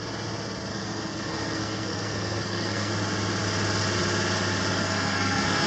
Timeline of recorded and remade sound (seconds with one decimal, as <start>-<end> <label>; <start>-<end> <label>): 0.0-0.7 recorded; 0.7-2.9 remade; 2.9-4.8 recorded; 4.8-5.7 remade

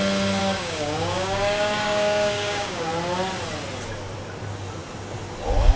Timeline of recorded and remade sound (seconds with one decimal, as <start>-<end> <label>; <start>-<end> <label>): 0.0-0.4 recorded; 0.4-2.9 remade; 2.9-5.8 recorded

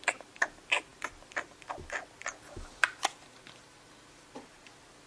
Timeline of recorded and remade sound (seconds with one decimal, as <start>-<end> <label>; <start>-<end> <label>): 0.0-5.1 recorded